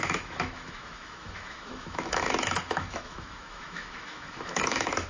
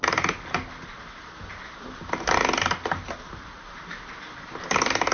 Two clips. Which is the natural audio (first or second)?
second